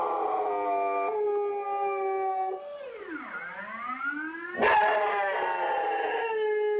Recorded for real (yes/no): yes